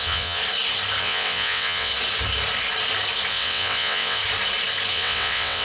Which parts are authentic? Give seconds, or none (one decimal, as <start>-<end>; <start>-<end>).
0.4-1.0; 1.9-3.3; 4.2-4.9